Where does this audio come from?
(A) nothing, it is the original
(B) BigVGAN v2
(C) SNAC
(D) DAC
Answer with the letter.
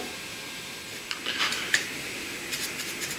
A